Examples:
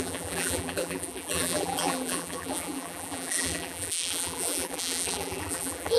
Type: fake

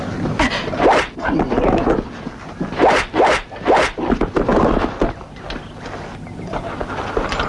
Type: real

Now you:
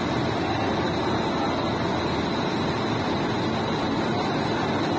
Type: real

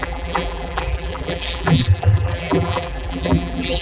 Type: fake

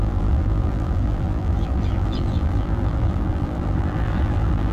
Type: fake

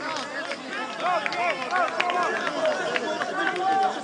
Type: real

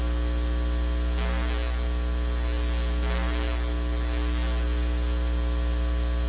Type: real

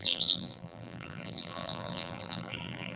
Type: fake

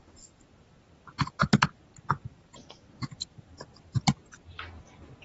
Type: real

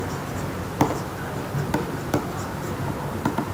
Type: fake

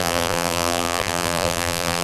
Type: fake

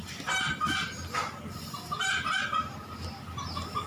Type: real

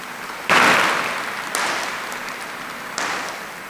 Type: real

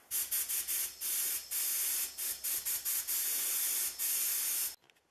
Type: real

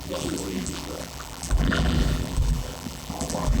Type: fake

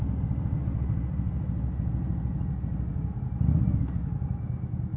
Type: real